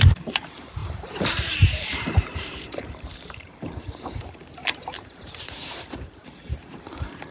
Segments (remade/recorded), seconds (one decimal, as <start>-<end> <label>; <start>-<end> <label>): 0.0-7.3 remade